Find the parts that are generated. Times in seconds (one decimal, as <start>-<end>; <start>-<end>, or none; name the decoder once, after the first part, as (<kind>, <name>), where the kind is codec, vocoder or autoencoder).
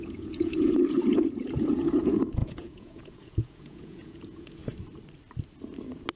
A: 0.0-4.6 (vocoder, Vocos)